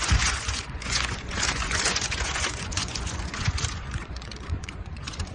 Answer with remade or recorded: remade